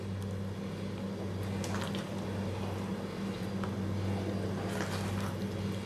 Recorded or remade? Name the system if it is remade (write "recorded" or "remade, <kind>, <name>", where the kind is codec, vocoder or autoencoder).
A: recorded